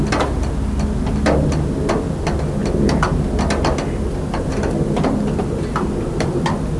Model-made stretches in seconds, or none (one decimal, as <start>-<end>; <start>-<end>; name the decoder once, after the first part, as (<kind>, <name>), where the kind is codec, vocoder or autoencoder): none